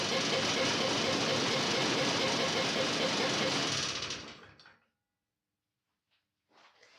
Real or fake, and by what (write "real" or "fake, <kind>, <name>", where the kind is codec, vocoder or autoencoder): real